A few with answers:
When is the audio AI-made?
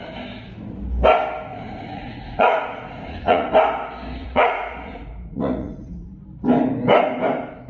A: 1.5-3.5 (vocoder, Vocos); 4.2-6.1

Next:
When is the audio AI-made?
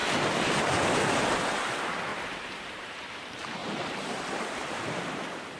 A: 2.1-3.1 (vocoder, BigVGAN v2); 3.6-4.2